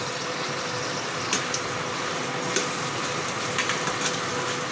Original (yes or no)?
yes